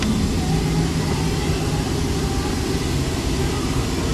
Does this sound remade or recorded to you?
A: recorded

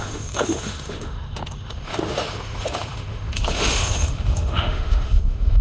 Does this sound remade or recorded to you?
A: remade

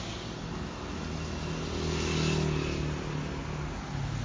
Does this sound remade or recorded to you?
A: recorded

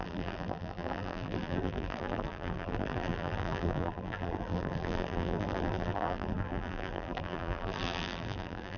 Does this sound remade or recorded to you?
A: remade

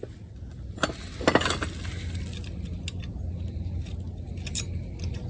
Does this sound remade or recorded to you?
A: recorded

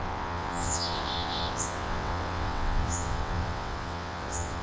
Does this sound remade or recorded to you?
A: remade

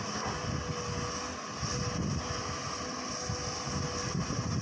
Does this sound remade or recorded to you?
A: recorded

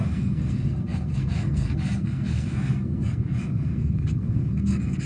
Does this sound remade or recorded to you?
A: remade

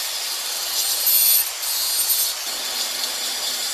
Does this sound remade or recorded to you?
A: recorded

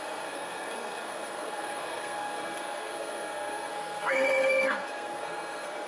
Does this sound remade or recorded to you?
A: remade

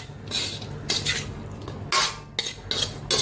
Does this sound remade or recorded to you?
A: recorded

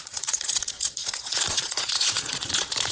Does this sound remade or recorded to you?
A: remade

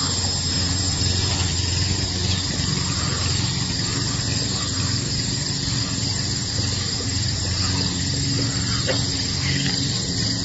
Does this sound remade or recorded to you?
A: recorded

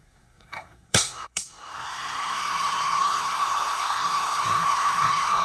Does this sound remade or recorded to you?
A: remade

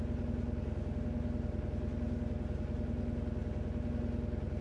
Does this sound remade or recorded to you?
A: recorded